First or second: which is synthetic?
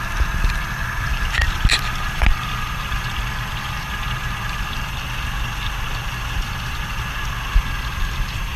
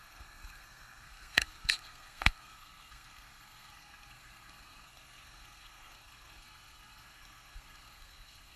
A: second